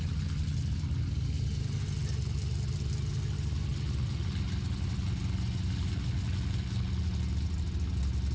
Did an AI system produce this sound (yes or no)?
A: no